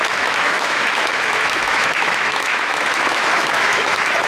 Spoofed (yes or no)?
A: yes